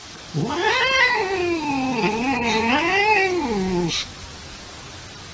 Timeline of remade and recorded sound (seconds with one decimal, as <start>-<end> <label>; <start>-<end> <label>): 0.0-0.5 remade; 0.5-1.4 recorded; 1.4-3.9 remade; 3.9-5.3 recorded